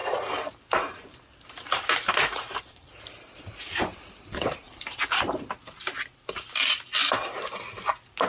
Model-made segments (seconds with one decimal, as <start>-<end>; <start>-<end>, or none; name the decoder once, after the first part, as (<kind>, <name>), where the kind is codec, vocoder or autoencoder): 0.0-5.0 (vocoder, BigVGAN v2); 7.0-7.8